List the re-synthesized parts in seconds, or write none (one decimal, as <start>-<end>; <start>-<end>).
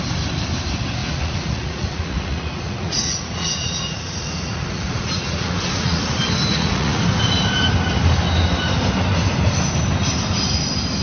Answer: 1.0-6.0; 6.5-7.0